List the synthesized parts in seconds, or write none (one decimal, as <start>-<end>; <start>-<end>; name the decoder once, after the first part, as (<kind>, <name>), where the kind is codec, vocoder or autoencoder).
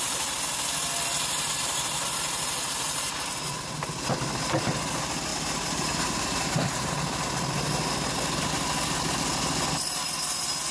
5.3-6.9 (vocoder, BigVGAN v2)